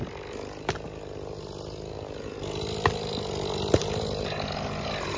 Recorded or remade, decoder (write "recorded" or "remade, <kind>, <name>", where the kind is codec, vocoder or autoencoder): recorded